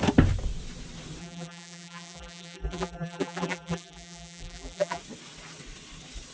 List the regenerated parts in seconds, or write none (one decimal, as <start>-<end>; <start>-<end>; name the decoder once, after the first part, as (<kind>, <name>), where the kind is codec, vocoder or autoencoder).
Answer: 1.2-5.0 (vocoder, BigVGAN v2)